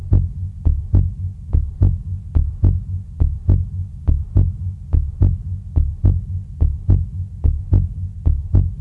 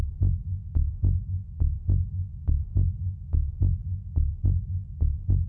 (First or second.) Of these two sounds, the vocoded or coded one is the second